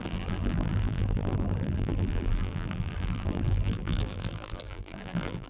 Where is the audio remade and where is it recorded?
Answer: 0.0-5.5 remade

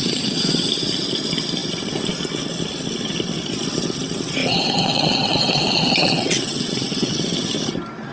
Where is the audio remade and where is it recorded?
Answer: 0.0-0.7 remade; 0.7-4.4 recorded; 4.4-7.2 remade; 7.2-8.1 recorded

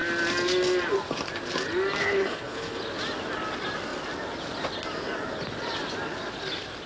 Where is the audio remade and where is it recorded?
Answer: 0.0-2.0 recorded; 2.0-2.8 remade; 2.8-6.9 recorded

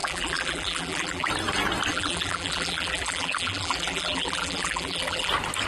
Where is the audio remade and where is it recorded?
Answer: 0.0-1.3 remade; 1.3-1.9 recorded; 1.9-5.3 remade; 5.3-5.7 recorded

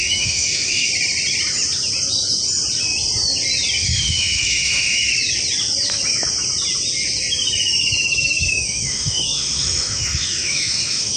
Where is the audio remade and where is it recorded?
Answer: 0.0-0.9 remade; 0.9-3.8 recorded; 3.8-5.1 remade; 5.1-8.5 recorded; 8.5-11.2 remade

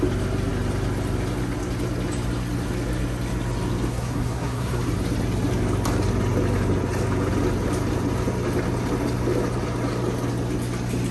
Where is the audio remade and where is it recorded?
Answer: 0.0-3.9 recorded; 3.9-4.8 remade; 4.8-11.1 recorded